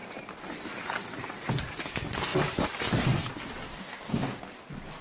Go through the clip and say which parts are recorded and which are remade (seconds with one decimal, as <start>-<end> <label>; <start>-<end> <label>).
0.0-3.7 recorded; 3.7-4.4 remade; 4.4-5.0 recorded